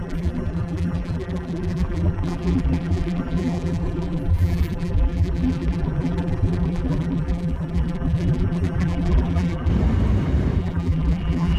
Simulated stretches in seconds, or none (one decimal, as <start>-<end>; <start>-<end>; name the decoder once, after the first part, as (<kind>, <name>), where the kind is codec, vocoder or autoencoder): 0.0-9.7 (vocoder, BigVGAN v2); 10.6-11.6